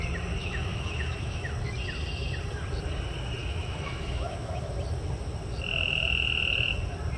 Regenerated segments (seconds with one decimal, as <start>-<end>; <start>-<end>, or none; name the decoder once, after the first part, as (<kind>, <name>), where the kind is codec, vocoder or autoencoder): 0.4-1.5 (autoencoder, DAC-VAE); 3.4-4.7